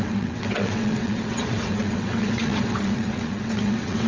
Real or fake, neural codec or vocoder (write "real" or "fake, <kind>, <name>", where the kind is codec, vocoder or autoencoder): fake, vocoder, WaveNeXt